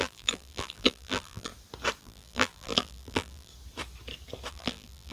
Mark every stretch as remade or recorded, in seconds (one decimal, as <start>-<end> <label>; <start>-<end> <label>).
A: 0.0-1.5 remade; 1.5-2.0 recorded; 2.0-3.5 remade; 3.5-4.5 recorded; 4.5-5.1 remade